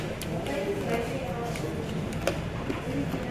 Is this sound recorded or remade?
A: recorded